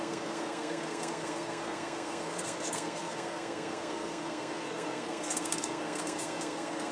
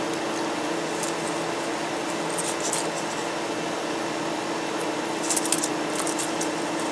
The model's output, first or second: first